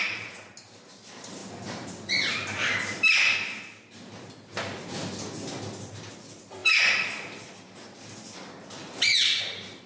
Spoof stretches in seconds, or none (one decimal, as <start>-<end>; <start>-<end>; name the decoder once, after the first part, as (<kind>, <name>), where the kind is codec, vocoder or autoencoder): none